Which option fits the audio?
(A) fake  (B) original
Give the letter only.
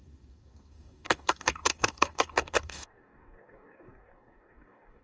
A